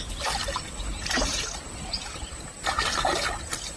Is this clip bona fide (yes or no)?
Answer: yes